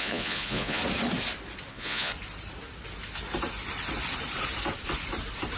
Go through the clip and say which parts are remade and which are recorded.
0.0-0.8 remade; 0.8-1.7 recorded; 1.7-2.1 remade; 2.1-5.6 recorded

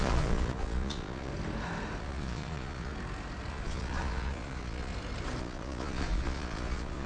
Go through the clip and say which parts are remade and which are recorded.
0.0-1.3 remade; 1.3-2.0 recorded; 2.0-2.9 remade; 2.9-3.5 recorded; 3.5-4.9 remade; 4.9-5.4 recorded; 5.4-7.1 remade